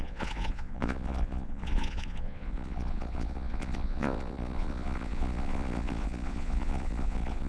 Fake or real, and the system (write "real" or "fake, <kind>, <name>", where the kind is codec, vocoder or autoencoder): fake, vocoder, Vocos